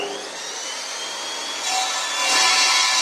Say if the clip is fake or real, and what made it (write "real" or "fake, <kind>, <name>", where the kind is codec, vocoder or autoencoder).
real